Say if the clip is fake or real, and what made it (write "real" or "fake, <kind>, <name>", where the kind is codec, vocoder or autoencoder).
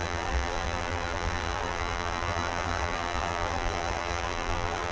fake, vocoder, BigVGAN v2